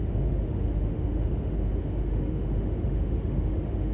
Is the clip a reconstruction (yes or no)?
yes